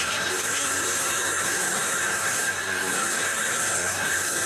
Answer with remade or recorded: remade